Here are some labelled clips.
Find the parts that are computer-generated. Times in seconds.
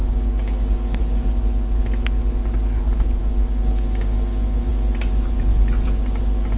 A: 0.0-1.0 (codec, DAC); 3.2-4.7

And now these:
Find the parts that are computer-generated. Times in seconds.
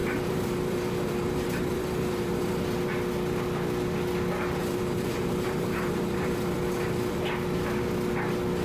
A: 0.0-2.6 (vocoder, BigVGAN v2); 4.6-7.2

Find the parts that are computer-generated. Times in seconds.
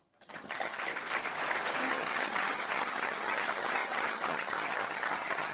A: 0.0-0.9 (vocoder, HiFi-GAN); 1.9-5.5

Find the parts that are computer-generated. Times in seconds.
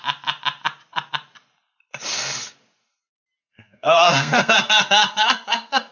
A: 3.4-5.9 (codec, SNAC)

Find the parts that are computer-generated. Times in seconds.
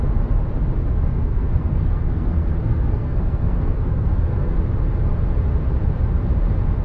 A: 1.1-4.6 (codec, SNAC)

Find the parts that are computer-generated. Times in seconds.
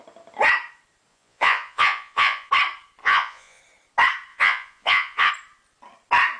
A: 1.1-2.5 (vocoder, Vocos); 3.0-3.6; 4.3-5.3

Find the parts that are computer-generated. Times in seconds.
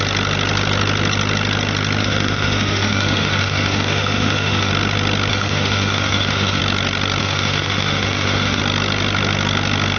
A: 2.0-4.7 (autoencoder, DAC-VAE); 5.3-6.6; 7.2-8.6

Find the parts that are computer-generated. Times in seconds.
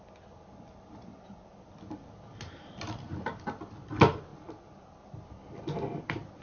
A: none